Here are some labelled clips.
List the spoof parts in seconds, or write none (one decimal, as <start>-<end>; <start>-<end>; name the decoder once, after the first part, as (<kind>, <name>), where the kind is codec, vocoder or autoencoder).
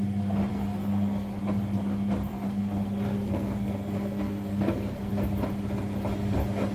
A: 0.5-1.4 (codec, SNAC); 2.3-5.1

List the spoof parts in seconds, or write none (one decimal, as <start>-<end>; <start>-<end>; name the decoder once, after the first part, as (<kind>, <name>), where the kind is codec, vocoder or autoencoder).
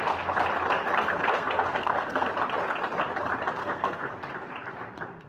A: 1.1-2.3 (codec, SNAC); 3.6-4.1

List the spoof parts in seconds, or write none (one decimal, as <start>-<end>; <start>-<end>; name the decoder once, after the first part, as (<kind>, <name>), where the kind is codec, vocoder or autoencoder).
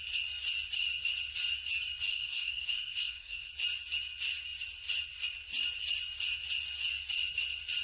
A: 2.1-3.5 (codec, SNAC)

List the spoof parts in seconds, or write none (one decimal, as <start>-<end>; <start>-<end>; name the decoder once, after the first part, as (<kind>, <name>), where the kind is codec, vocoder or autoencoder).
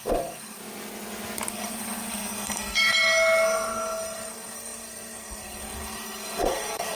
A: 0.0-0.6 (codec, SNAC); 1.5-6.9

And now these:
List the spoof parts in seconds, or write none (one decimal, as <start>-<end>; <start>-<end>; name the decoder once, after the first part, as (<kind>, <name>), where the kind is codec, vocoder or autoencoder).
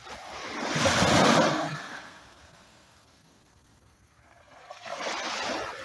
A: 1.5-5.0 (codec, SNAC)